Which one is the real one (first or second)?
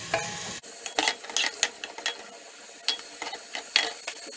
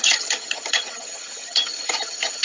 first